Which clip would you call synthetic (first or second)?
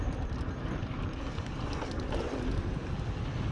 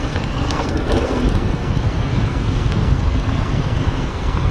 second